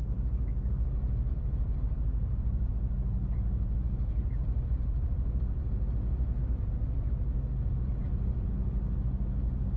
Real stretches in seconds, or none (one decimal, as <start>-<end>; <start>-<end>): 0.0-1.3; 2.7-4.2; 5.7-8.0; 8.5-9.8